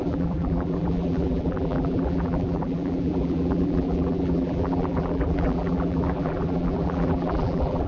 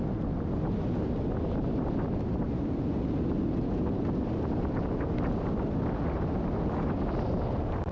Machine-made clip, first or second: first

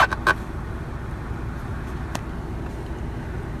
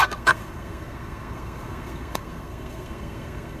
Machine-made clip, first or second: second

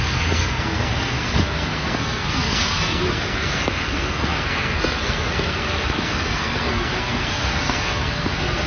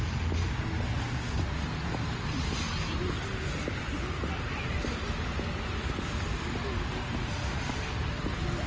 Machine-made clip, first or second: first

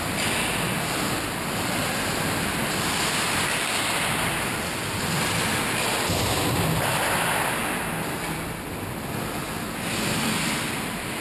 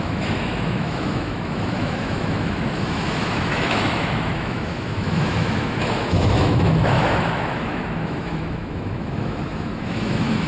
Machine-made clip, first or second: second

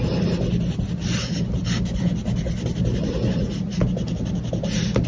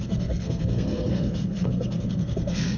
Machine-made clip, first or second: second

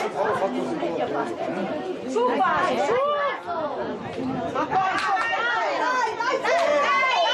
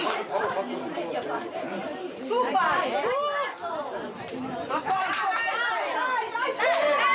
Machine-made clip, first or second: second